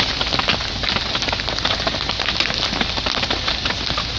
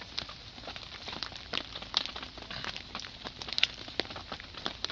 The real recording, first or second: first